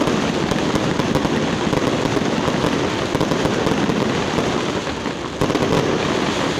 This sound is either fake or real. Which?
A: real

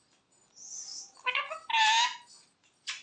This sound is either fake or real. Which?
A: real